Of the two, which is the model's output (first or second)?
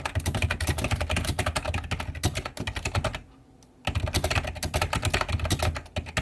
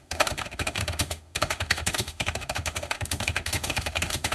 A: second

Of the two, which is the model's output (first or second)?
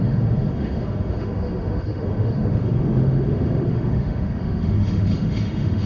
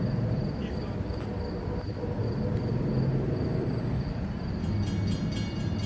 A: first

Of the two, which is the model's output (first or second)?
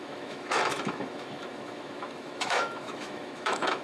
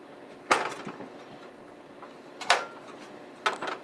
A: first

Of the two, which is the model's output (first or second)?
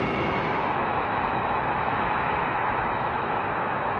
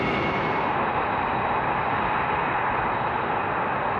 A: first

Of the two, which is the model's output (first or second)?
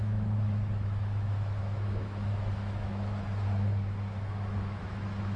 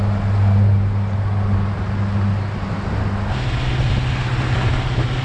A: first